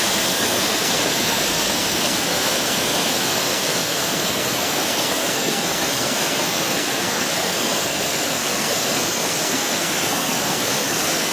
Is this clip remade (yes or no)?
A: yes